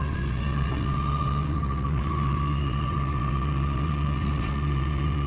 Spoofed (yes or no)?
yes